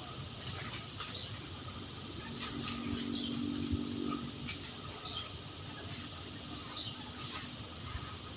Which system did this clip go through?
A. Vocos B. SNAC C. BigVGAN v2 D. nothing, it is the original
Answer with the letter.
D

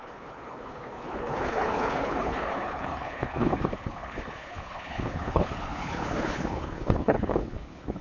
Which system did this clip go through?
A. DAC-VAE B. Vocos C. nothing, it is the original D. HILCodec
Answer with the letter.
D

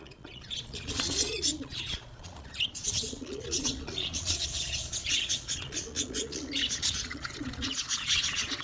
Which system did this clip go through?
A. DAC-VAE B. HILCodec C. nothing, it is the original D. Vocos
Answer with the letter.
D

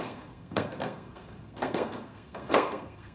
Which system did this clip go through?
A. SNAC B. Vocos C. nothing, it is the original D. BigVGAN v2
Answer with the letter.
A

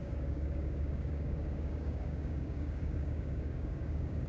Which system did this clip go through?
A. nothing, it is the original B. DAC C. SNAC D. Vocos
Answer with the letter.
B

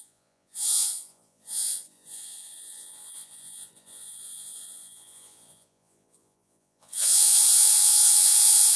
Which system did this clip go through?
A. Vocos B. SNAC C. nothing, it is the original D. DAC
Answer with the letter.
A